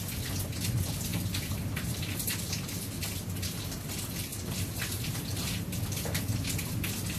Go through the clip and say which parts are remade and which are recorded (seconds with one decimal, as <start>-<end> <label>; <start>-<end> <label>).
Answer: 0.0-1.1 recorded; 1.1-2.0 remade; 2.0-4.3 recorded; 4.3-6.2 remade; 6.2-7.2 recorded